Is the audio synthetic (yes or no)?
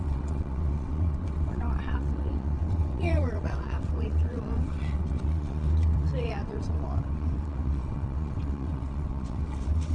yes